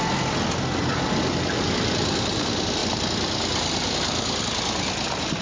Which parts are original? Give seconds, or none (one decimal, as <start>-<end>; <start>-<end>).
0.0-5.4